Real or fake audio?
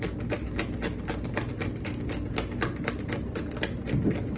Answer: real